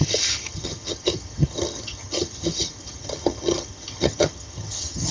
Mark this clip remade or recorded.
remade